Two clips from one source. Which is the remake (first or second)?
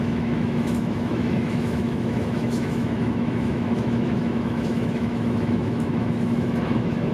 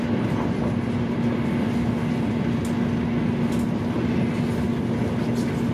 first